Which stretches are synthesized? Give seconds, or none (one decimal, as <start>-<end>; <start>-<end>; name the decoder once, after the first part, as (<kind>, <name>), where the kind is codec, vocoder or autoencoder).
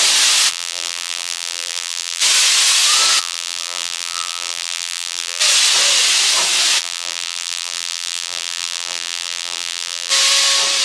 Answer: 0.5-2.2 (vocoder, BigVGAN v2); 3.2-5.4; 6.8-10.1